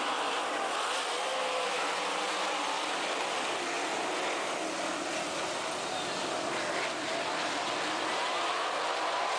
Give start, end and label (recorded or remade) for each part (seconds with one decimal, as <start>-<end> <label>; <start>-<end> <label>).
0.0-9.4 recorded